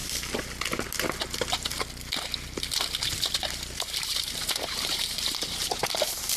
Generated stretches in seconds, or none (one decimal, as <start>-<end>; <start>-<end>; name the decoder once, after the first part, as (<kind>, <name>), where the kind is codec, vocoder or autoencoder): 3.8-6.4 (vocoder, BigVGAN v2)